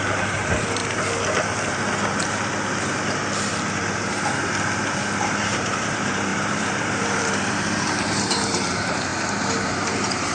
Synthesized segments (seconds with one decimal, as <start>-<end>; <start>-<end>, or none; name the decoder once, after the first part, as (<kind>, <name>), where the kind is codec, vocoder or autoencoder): 0.0-0.8 (vocoder, BigVGAN v2); 5.2-9.1; 9.7-10.3